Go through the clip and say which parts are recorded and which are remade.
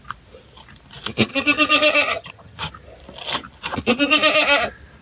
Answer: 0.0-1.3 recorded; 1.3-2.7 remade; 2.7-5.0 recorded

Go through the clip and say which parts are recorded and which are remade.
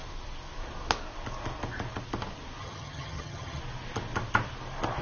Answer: 0.0-2.6 recorded; 2.6-3.6 remade; 3.6-5.0 recorded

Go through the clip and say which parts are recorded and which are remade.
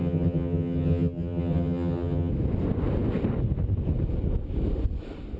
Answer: 0.0-2.3 remade; 2.3-5.4 recorded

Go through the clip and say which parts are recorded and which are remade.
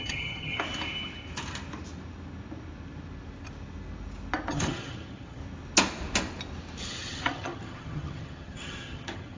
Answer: 0.0-0.6 remade; 0.6-4.5 recorded; 4.5-5.4 remade; 5.4-6.8 recorded; 6.8-9.4 remade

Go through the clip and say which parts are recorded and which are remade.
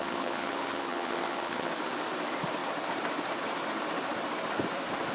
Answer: 0.0-1.7 remade; 1.7-5.1 recorded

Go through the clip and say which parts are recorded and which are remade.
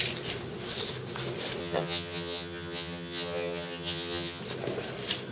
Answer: 0.0-1.6 recorded; 1.6-4.4 remade; 4.4-5.3 recorded